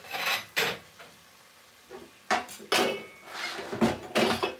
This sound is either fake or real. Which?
real